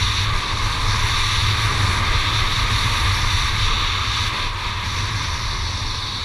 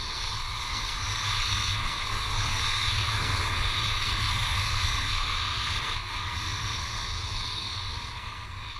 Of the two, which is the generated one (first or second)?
second